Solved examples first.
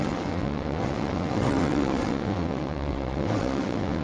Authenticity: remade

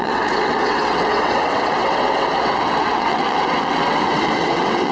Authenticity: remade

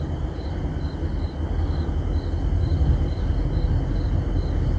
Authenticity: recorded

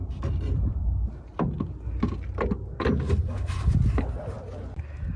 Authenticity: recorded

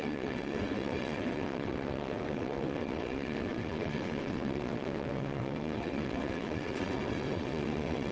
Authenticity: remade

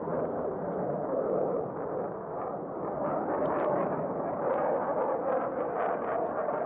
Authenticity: recorded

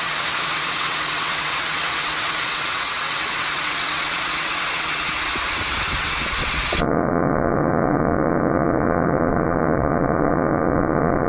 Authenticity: remade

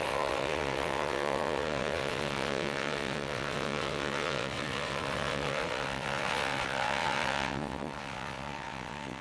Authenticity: remade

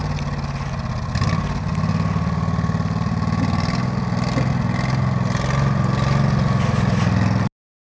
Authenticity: recorded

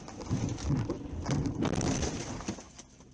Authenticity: recorded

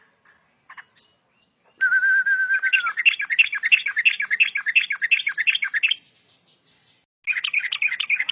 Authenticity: recorded